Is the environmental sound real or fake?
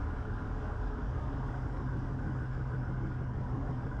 fake